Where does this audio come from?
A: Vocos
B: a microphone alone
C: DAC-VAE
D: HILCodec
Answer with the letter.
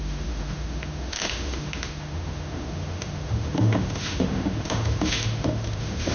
C